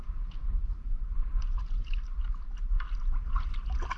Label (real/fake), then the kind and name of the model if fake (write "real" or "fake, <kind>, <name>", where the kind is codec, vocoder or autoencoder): real